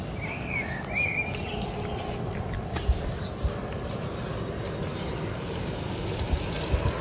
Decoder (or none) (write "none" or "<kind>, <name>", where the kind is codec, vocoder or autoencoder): none